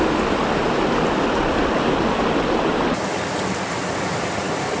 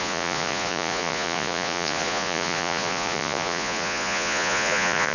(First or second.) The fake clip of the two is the second